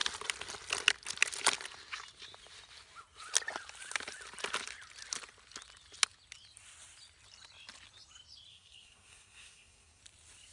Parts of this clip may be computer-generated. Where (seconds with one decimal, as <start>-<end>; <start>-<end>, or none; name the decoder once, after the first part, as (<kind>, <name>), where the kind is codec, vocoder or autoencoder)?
8.5-10.0 (codec, SNAC)